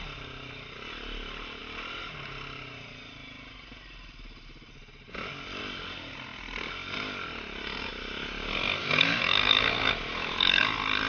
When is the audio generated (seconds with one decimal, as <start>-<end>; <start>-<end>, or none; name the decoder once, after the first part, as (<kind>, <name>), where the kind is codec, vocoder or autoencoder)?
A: 8.8-10.6 (autoencoder, DAC-VAE)